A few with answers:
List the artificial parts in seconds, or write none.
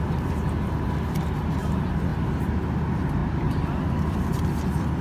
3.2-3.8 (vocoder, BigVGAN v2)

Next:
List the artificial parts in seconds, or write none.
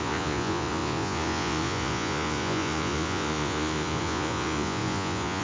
0.0-5.4 (vocoder, Vocos)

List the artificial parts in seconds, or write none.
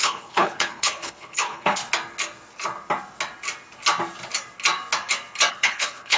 0.0-1.8 (codec, HILCodec); 5.5-6.2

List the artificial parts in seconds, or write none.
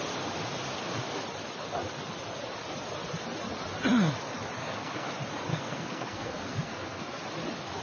4.6-5.1 (codec, SNAC); 5.5-7.2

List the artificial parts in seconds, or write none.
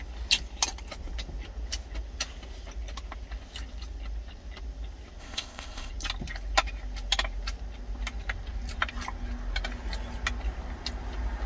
5.2-5.9 (codec, ZipCodec)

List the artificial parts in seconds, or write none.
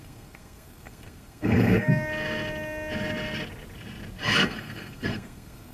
0.0-1.9 (codec, SNAC); 4.4-5.7